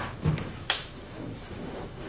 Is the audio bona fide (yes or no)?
no